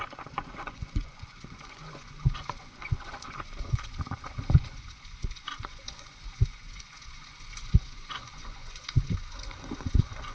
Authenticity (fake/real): fake